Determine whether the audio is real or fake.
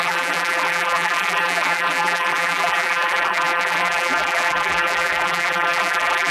fake